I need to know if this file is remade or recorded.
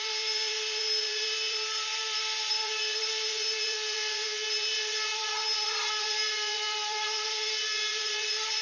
remade